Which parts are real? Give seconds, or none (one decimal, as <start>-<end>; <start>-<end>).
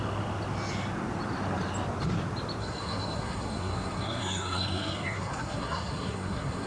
0.0-2.6